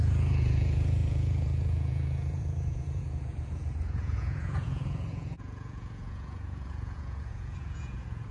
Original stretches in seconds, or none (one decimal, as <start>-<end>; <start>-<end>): none